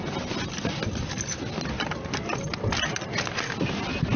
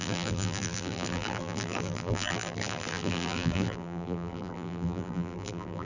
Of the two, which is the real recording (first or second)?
first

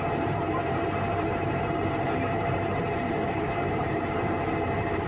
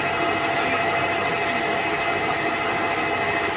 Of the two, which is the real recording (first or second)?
second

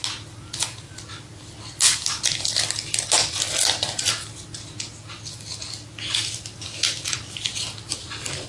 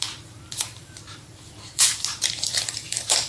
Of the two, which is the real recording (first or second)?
first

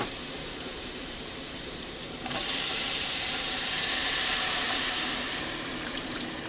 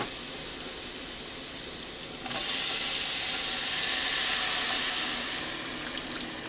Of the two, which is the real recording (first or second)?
second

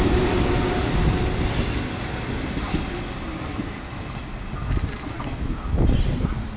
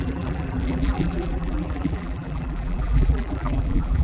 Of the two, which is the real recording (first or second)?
first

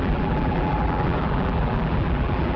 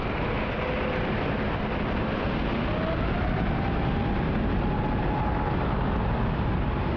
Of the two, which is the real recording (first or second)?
second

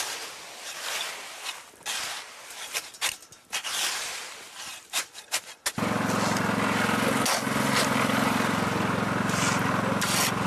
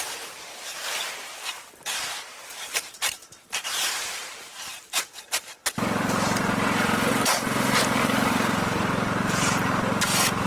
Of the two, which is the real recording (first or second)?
first